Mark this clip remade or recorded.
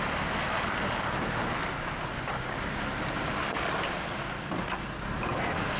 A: recorded